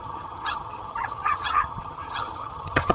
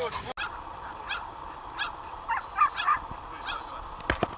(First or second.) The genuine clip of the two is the second